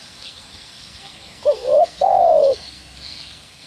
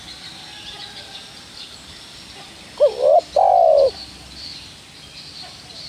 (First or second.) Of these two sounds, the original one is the second